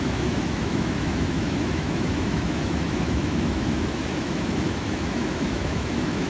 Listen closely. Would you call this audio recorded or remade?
remade